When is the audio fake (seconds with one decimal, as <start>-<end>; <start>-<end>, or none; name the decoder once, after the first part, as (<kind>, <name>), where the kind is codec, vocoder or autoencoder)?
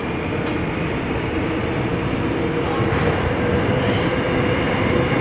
none